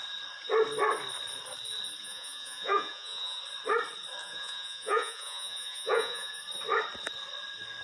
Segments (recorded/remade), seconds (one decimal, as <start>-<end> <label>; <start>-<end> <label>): 0.0-2.0 recorded; 2.0-3.4 remade; 3.4-4.2 recorded; 4.2-6.4 remade; 6.4-7.8 recorded